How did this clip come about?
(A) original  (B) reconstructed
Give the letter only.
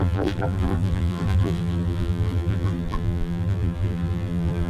B